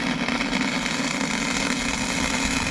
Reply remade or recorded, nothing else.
recorded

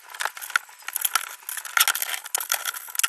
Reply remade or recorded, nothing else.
recorded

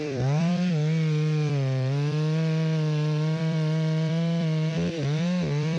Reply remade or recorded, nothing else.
remade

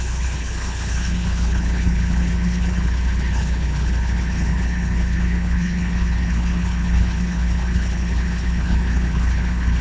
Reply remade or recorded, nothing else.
remade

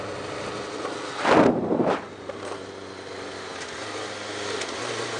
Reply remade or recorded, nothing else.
recorded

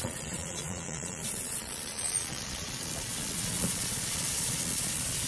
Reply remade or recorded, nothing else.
remade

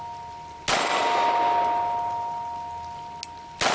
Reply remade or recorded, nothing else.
recorded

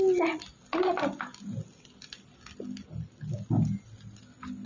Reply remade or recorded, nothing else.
recorded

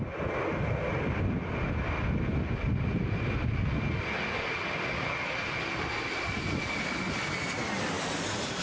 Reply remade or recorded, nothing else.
recorded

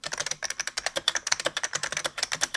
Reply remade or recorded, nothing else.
remade